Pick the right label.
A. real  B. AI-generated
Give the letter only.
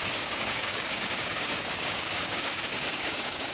B